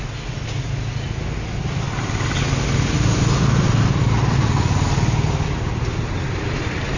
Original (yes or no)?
yes